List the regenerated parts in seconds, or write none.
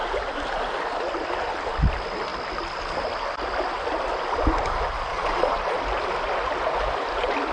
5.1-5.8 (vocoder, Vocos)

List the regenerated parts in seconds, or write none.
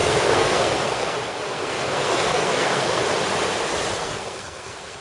0.0-3.0 (codec, SNAC); 4.0-5.0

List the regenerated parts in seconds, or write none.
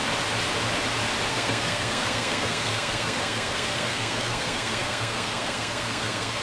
1.3-6.4 (codec, SNAC)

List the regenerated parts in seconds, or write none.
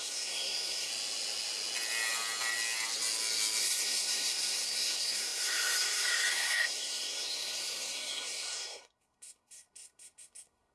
0.0-0.9 (codec, SNAC); 3.6-10.7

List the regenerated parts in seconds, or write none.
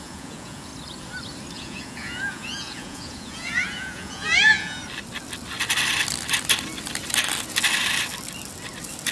0.0-0.7 (vocoder, Vocos); 1.5-4.8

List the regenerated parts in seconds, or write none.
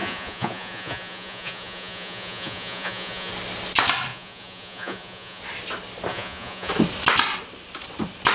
0.0-3.3 (vocoder, Vocos); 4.1-5.4; 6.1-6.7